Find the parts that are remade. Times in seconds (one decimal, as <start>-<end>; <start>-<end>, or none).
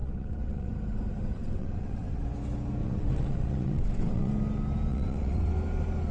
0.0-0.7; 1.3-2.2; 2.8-4.3; 4.9-5.5